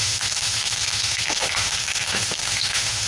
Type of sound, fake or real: fake